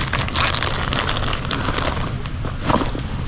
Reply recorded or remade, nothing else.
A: recorded